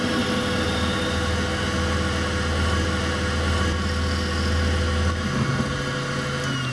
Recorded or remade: recorded